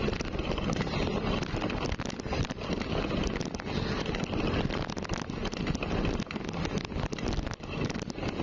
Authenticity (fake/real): real